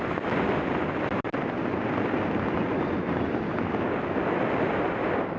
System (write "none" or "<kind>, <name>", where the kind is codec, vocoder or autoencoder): none